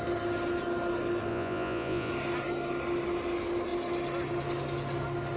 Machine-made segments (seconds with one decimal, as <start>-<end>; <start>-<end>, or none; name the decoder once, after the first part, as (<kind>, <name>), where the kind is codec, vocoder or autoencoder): 1.3-2.1 (vocoder, Vocos)